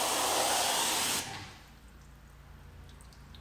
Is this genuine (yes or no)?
yes